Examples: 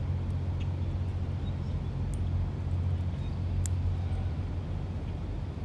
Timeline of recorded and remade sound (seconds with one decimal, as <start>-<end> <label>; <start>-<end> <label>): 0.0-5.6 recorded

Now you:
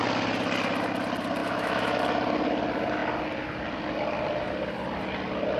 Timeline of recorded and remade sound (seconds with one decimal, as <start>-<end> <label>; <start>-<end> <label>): 0.0-1.4 recorded; 1.4-2.0 remade; 2.0-5.6 recorded

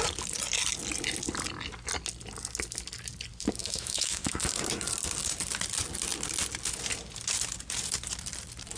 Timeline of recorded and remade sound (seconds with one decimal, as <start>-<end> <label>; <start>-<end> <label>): 0.0-3.6 recorded; 3.6-4.5 remade; 4.5-8.8 recorded

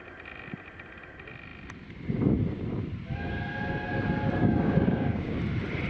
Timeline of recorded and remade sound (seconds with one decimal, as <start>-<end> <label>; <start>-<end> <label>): 0.0-4.4 recorded; 4.4-5.4 remade; 5.4-5.9 recorded

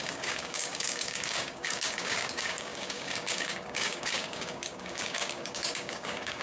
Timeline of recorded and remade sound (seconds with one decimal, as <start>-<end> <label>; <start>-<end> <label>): 0.0-6.4 remade

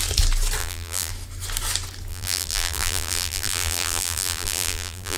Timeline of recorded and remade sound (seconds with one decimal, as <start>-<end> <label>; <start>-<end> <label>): 0.0-0.6 recorded; 0.6-1.1 remade; 1.1-2.1 recorded; 2.1-5.2 remade